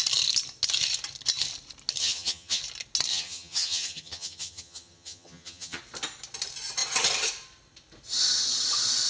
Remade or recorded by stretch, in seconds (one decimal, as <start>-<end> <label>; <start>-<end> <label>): 0.0-2.0 recorded; 2.0-2.6 remade; 2.6-3.1 recorded; 3.1-5.8 remade; 5.8-9.1 recorded